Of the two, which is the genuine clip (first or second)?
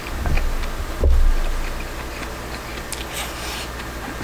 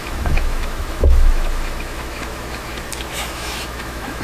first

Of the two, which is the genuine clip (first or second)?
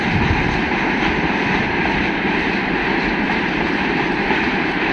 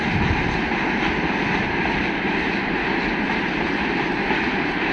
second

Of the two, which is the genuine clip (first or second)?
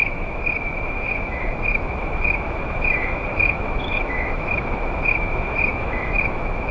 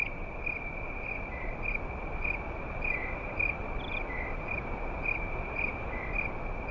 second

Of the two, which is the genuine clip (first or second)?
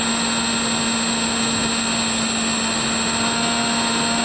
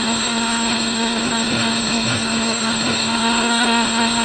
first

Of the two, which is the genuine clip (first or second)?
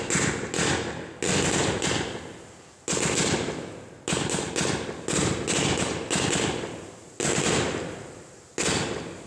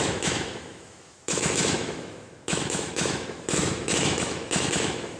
first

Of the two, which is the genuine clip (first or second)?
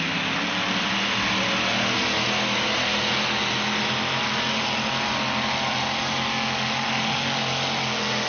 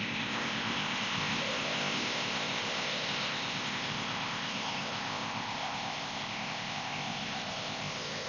first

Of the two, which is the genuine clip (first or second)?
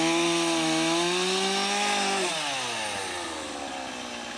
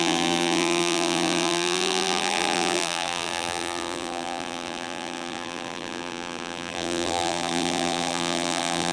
first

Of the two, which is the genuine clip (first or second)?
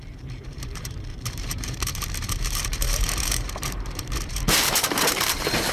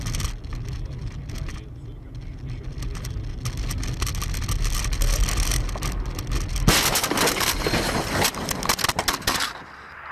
second